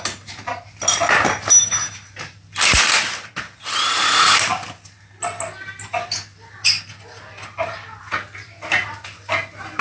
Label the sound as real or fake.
real